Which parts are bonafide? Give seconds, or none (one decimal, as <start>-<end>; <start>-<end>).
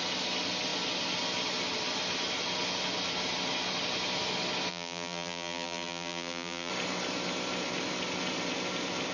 0.0-4.7; 6.7-9.1